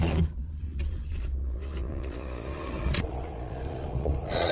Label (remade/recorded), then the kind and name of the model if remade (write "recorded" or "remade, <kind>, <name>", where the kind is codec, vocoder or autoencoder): remade, vocoder, Vocos